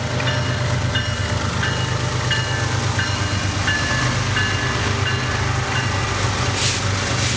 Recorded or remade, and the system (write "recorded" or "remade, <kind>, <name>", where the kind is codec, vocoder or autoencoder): recorded